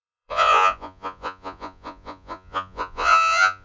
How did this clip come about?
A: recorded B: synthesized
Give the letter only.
B